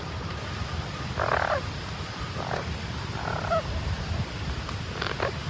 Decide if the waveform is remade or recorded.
remade